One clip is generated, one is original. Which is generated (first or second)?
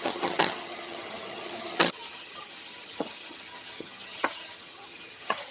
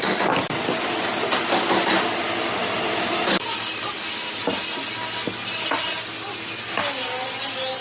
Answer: first